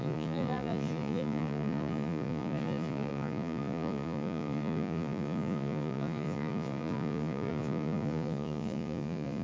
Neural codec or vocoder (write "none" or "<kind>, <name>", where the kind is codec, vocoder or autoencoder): vocoder, Vocos